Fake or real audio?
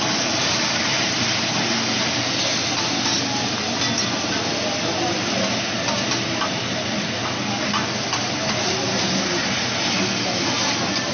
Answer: real